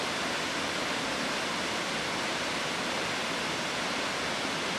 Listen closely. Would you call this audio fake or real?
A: real